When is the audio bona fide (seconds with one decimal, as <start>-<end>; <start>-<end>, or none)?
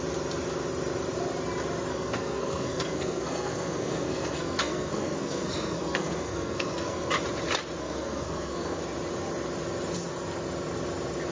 0.0-1.9; 7.1-7.8; 8.8-11.3